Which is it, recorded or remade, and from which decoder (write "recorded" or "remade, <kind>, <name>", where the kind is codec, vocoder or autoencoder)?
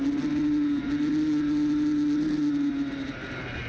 recorded